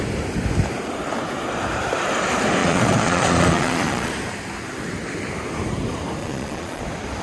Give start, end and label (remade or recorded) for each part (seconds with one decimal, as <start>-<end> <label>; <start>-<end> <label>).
0.0-2.6 recorded; 2.6-4.1 remade; 4.1-6.2 recorded; 6.2-6.8 remade; 6.8-7.2 recorded

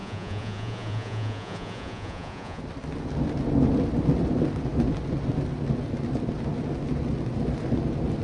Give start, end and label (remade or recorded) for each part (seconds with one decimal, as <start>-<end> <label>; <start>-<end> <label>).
0.0-2.6 remade; 2.6-8.2 recorded

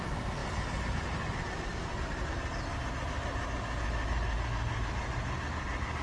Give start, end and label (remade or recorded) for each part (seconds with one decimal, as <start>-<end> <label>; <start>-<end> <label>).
0.0-6.0 recorded